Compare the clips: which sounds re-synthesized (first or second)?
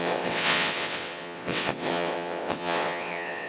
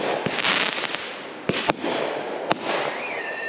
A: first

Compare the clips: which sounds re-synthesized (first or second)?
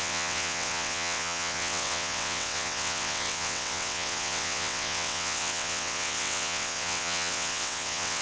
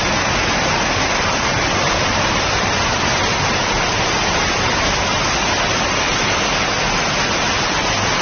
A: first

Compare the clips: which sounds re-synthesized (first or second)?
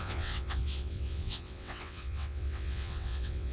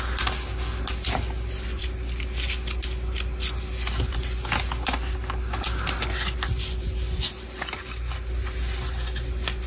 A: first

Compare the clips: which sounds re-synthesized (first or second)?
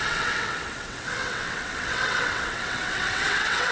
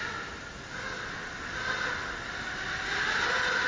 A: first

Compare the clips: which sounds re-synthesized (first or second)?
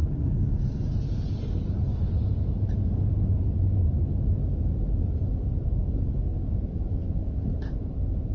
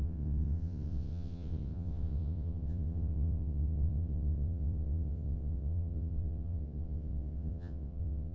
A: second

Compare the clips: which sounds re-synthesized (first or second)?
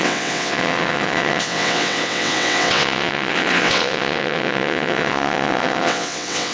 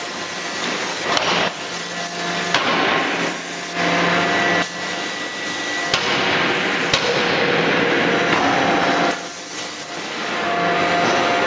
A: first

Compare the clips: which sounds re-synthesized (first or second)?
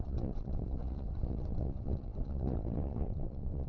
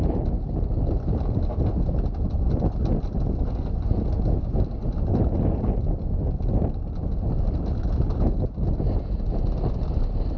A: first